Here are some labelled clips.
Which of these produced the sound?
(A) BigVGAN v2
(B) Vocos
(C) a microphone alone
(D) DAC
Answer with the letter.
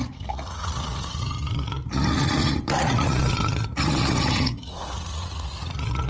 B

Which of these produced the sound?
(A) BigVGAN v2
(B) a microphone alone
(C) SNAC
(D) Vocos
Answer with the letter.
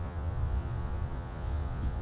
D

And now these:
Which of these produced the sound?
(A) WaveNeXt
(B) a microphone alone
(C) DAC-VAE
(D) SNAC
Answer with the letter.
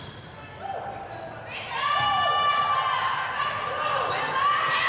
B